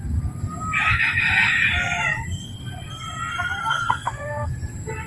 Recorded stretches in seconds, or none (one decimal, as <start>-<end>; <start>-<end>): 0.0-3.6; 4.5-5.1